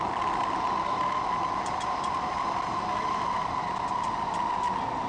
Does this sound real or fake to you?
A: real